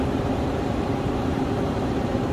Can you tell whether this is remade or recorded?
remade